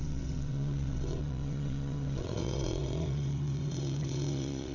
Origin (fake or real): fake